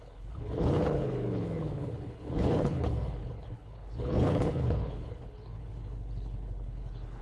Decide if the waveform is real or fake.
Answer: fake